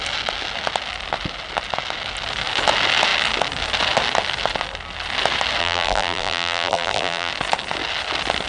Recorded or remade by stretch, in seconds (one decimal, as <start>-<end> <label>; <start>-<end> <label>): 0.0-5.6 recorded; 5.6-7.3 remade; 7.3-8.5 recorded